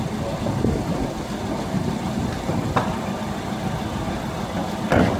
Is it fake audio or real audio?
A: real